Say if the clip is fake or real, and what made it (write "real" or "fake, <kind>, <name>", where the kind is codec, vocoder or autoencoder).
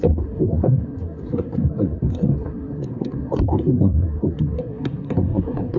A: fake, codec, SNAC